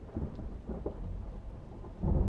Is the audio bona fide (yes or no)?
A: yes